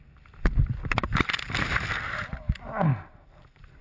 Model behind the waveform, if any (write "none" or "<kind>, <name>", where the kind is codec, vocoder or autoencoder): none